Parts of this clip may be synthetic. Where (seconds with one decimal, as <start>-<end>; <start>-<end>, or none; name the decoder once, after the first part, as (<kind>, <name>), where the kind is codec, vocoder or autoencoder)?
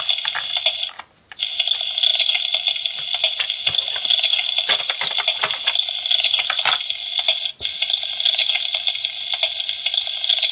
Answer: none